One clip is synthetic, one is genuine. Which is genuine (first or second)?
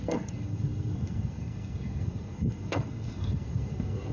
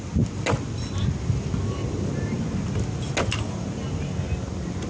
second